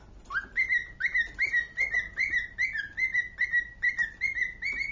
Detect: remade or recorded recorded